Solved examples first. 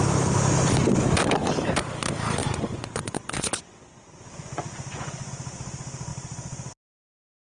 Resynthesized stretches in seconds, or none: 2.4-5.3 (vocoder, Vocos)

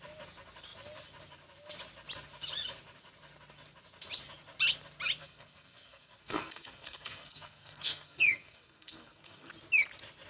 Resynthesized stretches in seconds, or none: 5.2-9.5 (codec, SNAC)